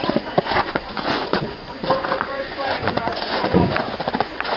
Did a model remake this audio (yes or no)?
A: yes